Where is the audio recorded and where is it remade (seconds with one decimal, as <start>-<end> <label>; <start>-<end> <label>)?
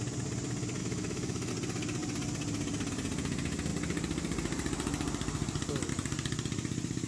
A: 0.0-0.8 recorded; 0.8-1.5 remade; 1.5-7.1 recorded